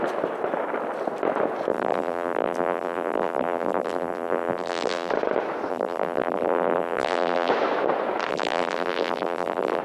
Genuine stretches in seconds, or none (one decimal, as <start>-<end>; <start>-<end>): 0.0-1.7; 5.1-5.7; 7.5-8.3